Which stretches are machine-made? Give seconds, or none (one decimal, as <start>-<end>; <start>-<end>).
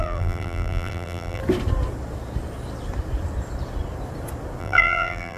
0.0-1.4; 4.6-5.4